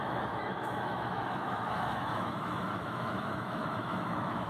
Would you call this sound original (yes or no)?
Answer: no